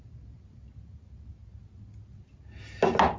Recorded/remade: recorded